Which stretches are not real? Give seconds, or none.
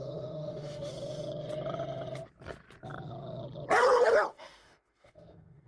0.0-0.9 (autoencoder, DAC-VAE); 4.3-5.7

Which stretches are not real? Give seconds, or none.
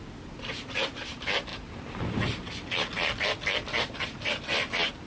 0.0-5.1 (vocoder, BigVGAN v2)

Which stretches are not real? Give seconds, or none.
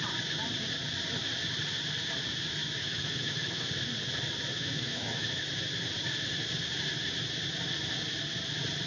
2.8-3.7 (autoencoder, DAC-VAE); 4.5-5.3